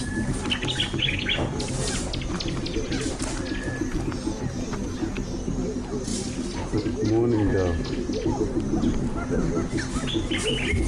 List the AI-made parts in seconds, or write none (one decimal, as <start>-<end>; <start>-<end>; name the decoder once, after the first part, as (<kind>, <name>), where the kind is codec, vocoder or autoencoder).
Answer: none